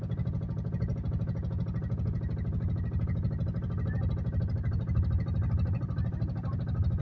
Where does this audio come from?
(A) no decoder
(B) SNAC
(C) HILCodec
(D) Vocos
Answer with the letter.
A